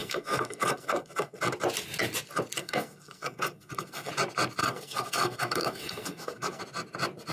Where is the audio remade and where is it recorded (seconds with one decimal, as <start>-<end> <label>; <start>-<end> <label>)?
0.0-1.4 remade; 1.4-2.6 recorded; 2.6-4.1 remade; 4.1-4.6 recorded; 4.6-6.6 remade; 6.6-7.3 recorded